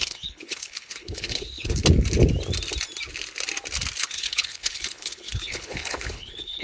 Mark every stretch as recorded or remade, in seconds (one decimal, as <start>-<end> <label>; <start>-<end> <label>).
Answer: 0.0-1.8 remade; 1.8-4.0 recorded; 4.0-6.6 remade